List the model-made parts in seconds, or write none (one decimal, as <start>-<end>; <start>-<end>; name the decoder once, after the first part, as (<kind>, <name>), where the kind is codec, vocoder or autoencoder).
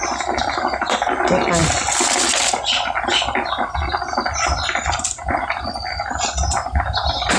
none